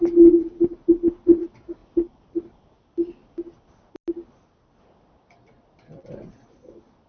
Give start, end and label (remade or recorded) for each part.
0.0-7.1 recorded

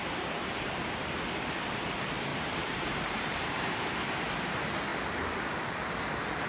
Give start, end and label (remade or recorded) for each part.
0.0-1.0 remade; 1.0-2.3 recorded; 2.3-4.0 remade; 4.0-6.5 recorded

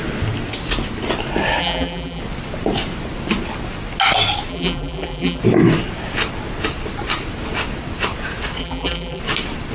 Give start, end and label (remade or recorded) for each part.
0.0-1.6 recorded; 1.6-2.2 remade; 2.2-4.5 recorded; 4.5-5.4 remade; 5.4-8.6 recorded; 8.6-9.2 remade; 9.2-9.7 recorded

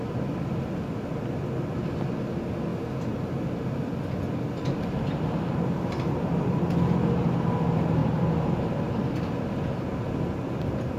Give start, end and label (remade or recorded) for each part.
0.0-11.0 recorded

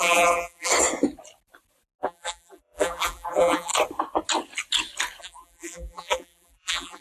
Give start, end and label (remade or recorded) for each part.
0.0-0.7 remade; 0.7-2.0 recorded; 2.0-3.7 remade; 3.7-5.2 recorded; 5.2-7.0 remade

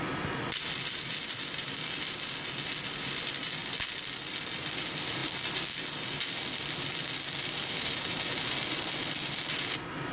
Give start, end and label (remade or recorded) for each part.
0.0-3.6 remade; 3.6-4.2 recorded; 4.2-10.1 remade

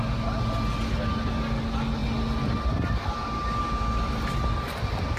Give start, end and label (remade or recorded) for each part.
0.0-5.2 recorded